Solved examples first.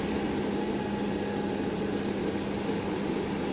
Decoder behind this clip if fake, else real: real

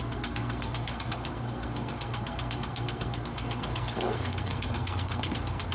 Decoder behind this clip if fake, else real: fake, codec, SNAC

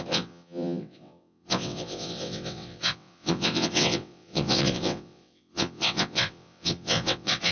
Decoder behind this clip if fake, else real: fake, vocoder, WaveNeXt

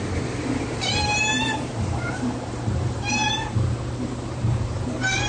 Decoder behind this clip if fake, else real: fake, vocoder, BigVGAN v2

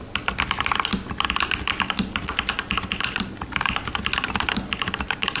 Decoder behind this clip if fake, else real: real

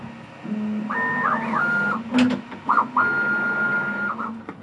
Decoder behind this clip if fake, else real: real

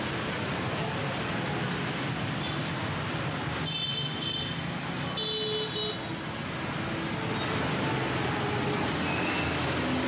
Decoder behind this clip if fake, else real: real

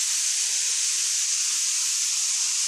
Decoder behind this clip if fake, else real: real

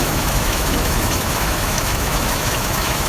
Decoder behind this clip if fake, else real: fake, autoencoder, DAC-VAE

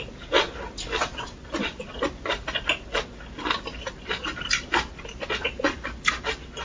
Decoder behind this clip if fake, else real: real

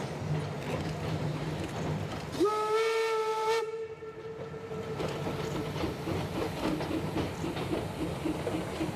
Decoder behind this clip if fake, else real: real